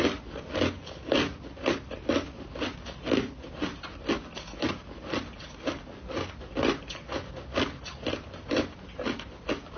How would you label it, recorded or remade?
recorded